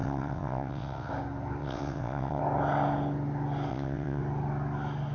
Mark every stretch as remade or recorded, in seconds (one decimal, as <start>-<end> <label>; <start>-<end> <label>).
0.0-1.1 remade; 1.1-1.6 recorded; 1.6-2.4 remade; 2.4-3.7 recorded; 3.7-4.2 remade; 4.2-5.1 recorded